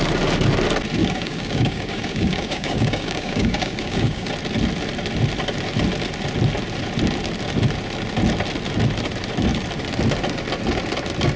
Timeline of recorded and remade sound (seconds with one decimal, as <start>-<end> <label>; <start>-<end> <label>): 0.0-1.0 recorded; 1.0-4.3 remade; 4.3-11.4 recorded